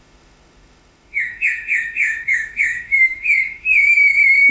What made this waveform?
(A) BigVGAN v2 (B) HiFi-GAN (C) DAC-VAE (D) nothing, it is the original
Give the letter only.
C